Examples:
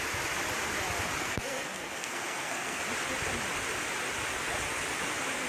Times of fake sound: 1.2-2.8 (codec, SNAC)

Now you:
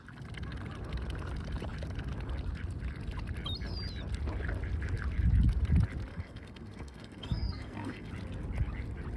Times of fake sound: 6.1-8.1 (codec, SNAC)

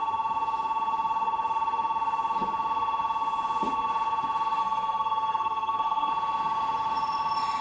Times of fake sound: 4.6-6.1 (codec, SNAC)

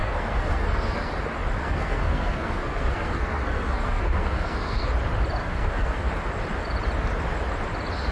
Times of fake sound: 0.0-1.1 (codec, SNAC); 1.6-4.9; 5.4-6.1

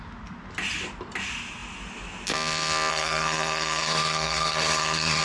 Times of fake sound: 2.9-5.2 (codec, SNAC)

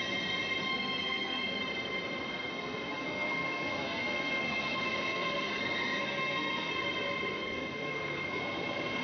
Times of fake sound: 0.7-1.6 (codec, SNAC); 2.3-6.7; 7.4-8.4